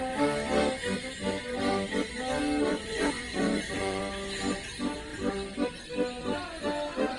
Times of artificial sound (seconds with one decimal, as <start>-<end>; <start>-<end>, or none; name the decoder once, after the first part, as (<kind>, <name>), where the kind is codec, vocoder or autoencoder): 2.7-4.0 (vocoder, Vocos)